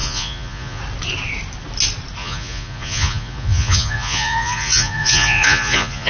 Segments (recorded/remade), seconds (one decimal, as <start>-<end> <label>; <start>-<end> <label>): 0.0-0.8 remade; 0.8-2.2 recorded; 2.2-6.1 remade